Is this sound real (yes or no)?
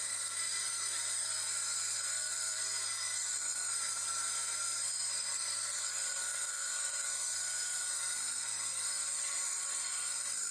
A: no